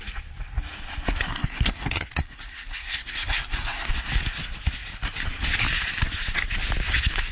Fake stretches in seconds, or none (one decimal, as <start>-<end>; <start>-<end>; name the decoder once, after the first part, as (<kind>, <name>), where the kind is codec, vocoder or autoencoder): 1.3-3.9 (codec, SNAC)